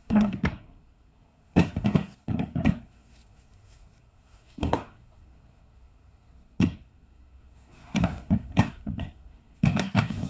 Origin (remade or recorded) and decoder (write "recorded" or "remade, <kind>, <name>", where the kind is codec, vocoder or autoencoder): remade, codec, SNAC